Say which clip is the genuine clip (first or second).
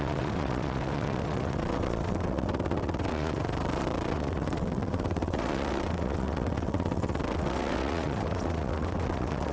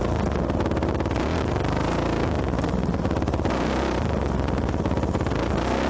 second